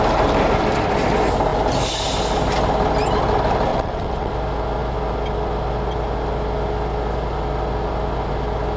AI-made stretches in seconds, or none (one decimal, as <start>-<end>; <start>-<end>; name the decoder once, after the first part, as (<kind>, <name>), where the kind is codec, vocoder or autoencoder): 3.7-4.3 (vocoder, WaveNeXt)